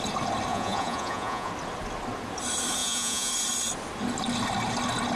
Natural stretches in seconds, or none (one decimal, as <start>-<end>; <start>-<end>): 0.0-0.5; 1.5-2.8; 3.3-5.2